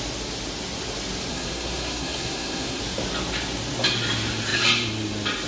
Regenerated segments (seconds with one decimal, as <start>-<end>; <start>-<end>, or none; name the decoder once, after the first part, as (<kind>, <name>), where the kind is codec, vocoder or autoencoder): 1.3-2.8 (codec, SNAC)